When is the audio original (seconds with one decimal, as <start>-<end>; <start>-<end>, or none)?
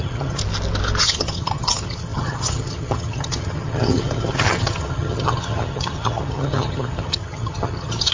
0.4-1.0